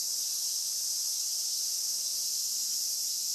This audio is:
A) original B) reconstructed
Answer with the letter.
A